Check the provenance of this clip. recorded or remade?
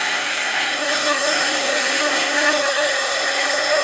remade